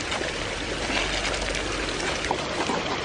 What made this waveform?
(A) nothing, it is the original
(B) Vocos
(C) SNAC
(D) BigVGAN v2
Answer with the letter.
A